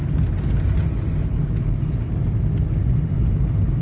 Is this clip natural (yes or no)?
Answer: yes